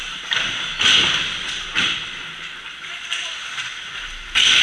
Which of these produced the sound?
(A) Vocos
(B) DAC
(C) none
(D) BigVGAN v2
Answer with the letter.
C